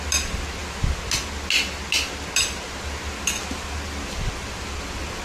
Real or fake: real